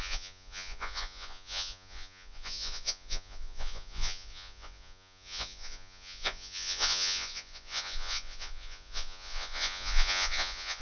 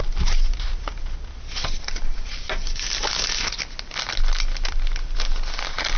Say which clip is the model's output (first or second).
first